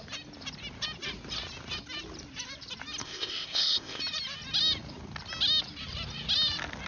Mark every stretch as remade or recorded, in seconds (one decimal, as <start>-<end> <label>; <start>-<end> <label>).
0.0-3.0 recorded; 3.0-4.0 remade; 4.0-6.9 recorded